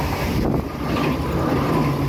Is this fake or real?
real